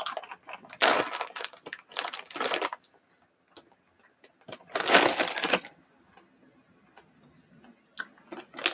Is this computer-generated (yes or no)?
no